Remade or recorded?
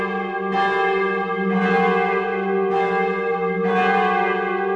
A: recorded